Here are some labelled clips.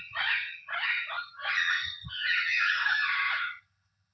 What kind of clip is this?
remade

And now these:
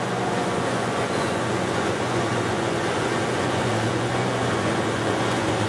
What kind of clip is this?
remade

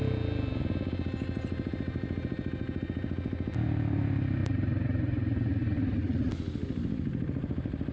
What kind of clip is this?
recorded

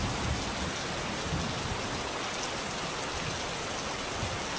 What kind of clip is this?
recorded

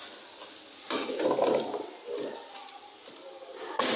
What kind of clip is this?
recorded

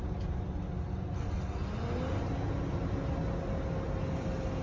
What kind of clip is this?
recorded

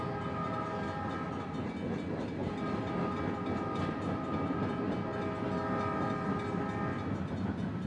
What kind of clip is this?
recorded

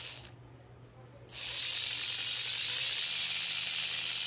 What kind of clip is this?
recorded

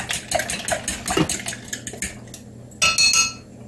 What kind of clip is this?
recorded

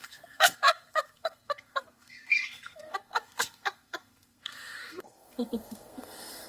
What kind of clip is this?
remade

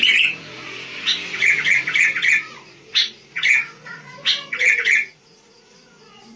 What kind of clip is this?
remade